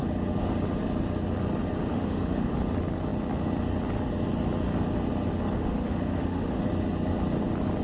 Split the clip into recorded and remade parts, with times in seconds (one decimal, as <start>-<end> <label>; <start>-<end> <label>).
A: 0.0-1.9 recorded; 1.9-2.5 remade; 2.5-5.6 recorded; 5.6-6.6 remade; 6.6-7.8 recorded